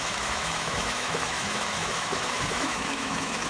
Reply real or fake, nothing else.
fake